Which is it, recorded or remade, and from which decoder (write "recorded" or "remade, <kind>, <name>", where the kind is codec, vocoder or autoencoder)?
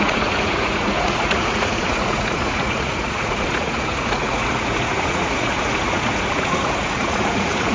remade, vocoder, Vocos